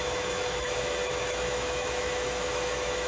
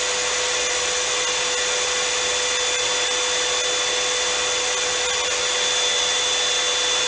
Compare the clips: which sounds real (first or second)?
second